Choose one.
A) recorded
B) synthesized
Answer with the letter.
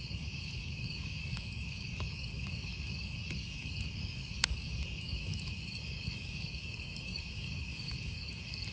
B